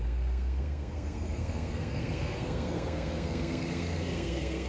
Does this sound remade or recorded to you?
remade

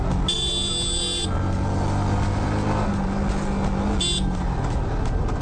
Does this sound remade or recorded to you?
recorded